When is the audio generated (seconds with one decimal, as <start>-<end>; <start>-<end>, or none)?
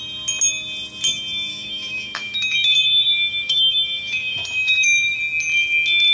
1.5-5.2